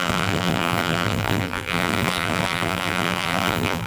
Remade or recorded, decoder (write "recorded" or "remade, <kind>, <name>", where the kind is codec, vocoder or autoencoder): remade, vocoder, BigVGAN v2